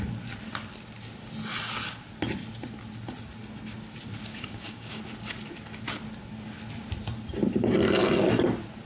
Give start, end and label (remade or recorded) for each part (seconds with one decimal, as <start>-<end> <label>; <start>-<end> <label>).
0.0-4.3 recorded; 4.3-5.0 remade; 5.0-8.9 recorded